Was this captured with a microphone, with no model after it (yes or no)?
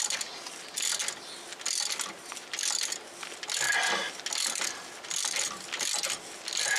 yes